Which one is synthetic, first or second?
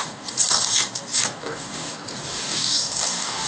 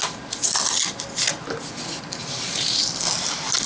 first